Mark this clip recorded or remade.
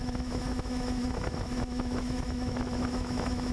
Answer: remade